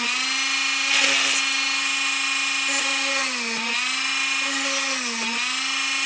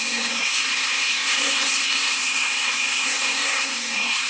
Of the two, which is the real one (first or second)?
first